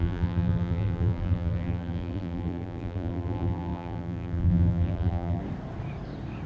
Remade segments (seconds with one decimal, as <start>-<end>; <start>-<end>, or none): 0.0-5.4